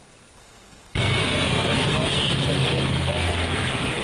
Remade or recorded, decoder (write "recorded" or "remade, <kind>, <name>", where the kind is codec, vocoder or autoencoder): remade, codec, SNAC